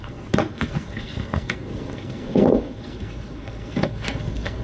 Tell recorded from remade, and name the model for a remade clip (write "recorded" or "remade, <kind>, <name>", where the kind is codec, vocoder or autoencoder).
remade, codec, SNAC